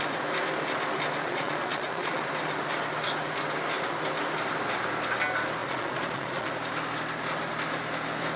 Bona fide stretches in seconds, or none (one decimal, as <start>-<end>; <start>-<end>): 0.0-1.2; 2.3-5.6; 6.5-8.4